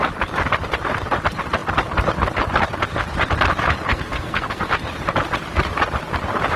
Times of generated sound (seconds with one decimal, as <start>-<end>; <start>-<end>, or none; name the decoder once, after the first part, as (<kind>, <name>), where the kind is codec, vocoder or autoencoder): 3.9-4.6 (codec, SNAC)